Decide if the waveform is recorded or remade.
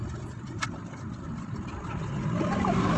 recorded